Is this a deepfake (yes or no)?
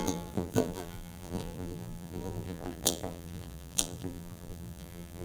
yes